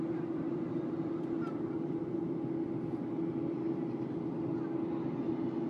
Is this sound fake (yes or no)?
no